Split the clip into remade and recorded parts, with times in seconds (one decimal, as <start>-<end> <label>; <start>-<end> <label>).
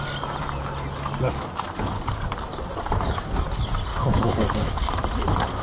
0.0-3.9 recorded; 3.9-4.9 remade; 4.9-5.6 recorded